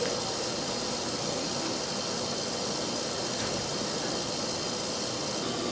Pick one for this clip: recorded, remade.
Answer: recorded